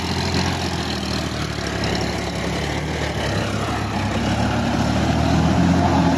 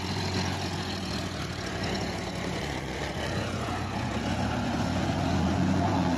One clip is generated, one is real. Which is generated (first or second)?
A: second